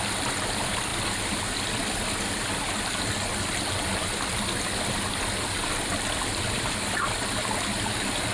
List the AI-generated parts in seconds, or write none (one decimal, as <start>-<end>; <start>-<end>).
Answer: none